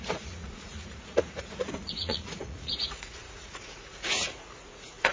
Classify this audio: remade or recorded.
remade